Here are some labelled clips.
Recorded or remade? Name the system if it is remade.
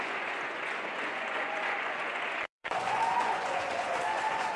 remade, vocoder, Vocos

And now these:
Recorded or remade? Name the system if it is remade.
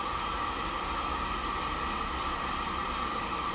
recorded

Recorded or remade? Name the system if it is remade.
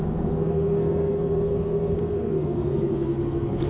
remade, codec, SNAC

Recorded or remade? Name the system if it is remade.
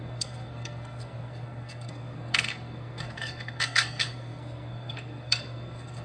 remade, codec, SNAC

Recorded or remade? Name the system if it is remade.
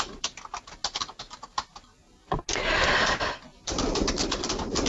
recorded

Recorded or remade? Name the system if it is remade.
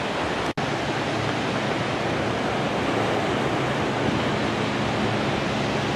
recorded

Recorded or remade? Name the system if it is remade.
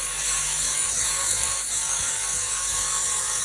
remade, codec, DAC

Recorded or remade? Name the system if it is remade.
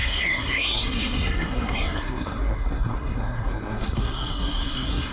remade, codec, SNAC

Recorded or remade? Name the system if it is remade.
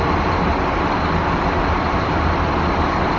recorded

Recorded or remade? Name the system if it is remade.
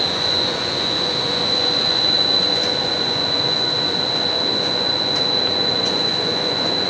remade, vocoder, Vocos